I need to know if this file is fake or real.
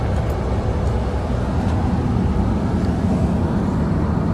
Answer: real